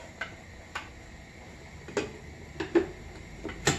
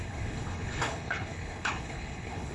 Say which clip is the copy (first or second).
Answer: second